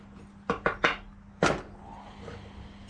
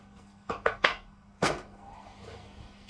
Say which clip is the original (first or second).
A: first